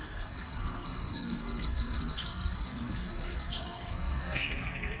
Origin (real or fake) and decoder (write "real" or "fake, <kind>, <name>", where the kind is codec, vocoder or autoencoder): fake, codec, SNAC